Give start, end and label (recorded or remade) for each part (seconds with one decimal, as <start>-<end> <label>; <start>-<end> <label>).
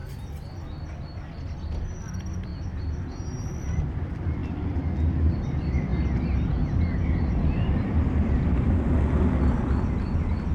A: 0.0-2.0 recorded; 2.0-2.5 remade; 2.5-3.3 recorded; 3.3-4.4 remade; 4.4-5.3 recorded; 5.3-5.9 remade; 5.9-7.3 recorded; 7.3-10.5 remade